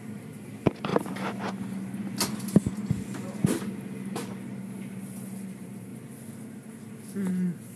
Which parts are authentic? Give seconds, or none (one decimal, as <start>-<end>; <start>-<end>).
0.9-5.4; 5.9-7.3